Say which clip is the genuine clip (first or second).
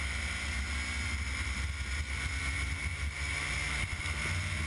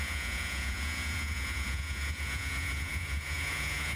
first